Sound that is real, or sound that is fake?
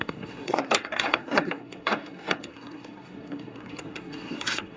fake